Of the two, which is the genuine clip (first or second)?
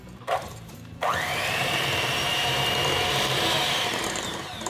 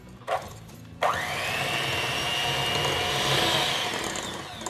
second